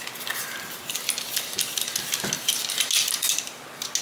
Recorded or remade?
recorded